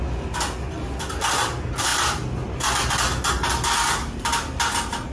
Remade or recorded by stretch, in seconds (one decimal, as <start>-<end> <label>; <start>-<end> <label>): 0.0-5.1 recorded